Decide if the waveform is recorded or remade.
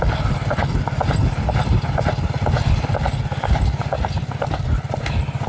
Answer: recorded